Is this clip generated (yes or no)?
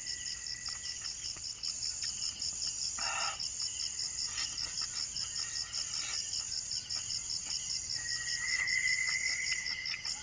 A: no